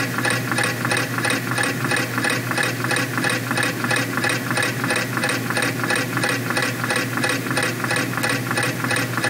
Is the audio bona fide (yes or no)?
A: yes